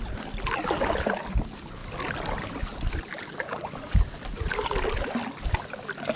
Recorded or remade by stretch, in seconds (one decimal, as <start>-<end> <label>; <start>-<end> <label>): 0.0-6.2 recorded